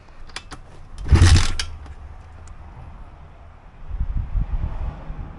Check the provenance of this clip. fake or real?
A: real